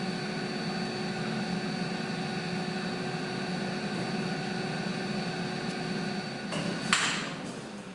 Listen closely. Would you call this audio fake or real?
real